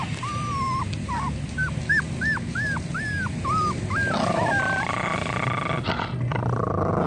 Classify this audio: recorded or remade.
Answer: recorded